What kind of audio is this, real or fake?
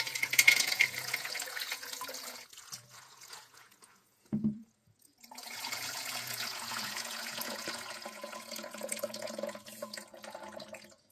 fake